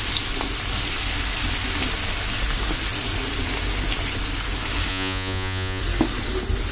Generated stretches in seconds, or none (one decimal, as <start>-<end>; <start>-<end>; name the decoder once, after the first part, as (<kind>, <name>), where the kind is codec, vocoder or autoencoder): 4.9-5.8 (vocoder, Vocos)

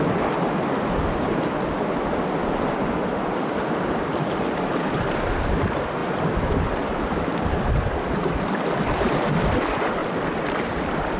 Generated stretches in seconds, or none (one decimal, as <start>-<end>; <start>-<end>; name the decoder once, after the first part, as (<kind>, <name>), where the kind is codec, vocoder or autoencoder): 2.4-4.2 (vocoder, BigVGAN v2); 6.0-9.2; 10.0-11.2

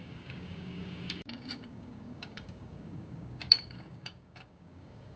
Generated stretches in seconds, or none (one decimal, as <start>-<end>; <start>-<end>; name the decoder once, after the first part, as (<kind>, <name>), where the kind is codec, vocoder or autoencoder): 0.0-5.2 (codec, DAC)

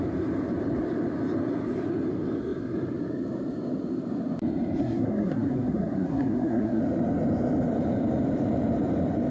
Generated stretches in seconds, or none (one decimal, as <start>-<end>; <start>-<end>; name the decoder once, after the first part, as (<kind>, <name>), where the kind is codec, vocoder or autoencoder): 4.8-6.8 (codec, SNAC)

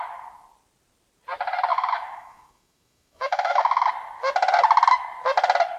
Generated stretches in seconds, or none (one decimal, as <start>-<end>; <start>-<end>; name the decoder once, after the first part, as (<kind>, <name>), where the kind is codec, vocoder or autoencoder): 1.7-3.9 (autoencoder, DAC-VAE)

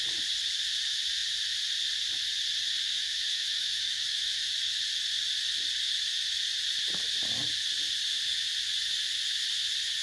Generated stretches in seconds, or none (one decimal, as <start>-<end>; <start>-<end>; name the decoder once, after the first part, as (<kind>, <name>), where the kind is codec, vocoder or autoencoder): 2.9-4.5 (autoencoder, DAC-VAE)

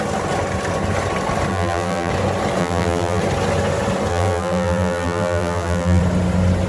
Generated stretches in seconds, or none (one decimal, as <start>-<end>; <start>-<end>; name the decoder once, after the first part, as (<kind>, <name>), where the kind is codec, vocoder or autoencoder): 1.5-2.1 (vocoder, BigVGAN v2); 2.6-3.2; 4.1-6.0

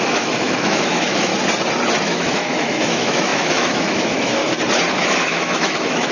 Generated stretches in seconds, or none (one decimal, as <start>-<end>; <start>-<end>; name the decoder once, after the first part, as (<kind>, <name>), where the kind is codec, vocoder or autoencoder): 0.0-1.3 (autoencoder, DAC-VAE); 2.0-4.4; 4.9-6.1